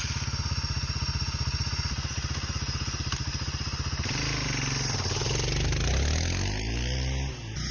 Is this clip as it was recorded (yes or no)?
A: yes